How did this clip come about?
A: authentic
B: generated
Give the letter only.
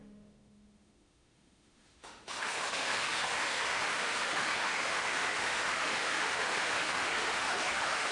B